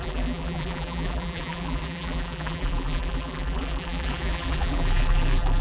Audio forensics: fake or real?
fake